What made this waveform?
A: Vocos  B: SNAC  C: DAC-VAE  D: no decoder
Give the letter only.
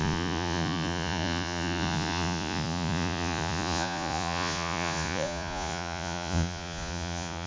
A